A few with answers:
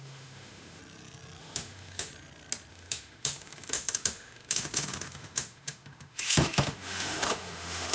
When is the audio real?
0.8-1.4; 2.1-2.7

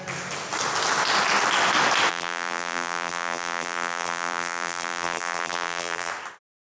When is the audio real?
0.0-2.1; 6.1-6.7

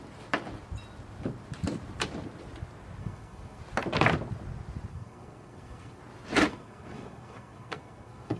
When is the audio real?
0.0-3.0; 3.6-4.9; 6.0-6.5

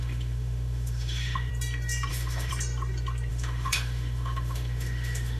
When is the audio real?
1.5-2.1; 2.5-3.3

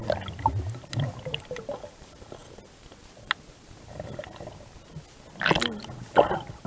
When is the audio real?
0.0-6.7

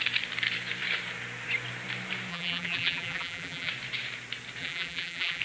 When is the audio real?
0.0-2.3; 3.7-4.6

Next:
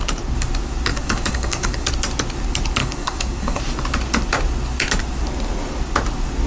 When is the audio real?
0.0-0.9; 1.9-2.8; 3.6-6.5